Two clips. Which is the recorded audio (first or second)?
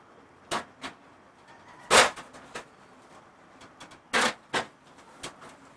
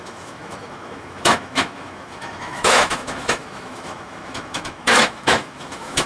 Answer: first